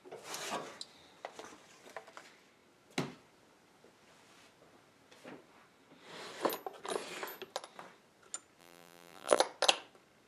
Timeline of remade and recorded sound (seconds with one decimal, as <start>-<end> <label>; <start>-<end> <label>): 0.0-8.6 recorded; 8.6-9.4 remade; 9.4-10.3 recorded